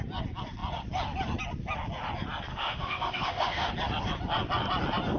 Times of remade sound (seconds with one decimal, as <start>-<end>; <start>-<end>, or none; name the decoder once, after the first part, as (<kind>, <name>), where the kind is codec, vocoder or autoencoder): 2.5-3.7 (autoencoder, DAC-VAE)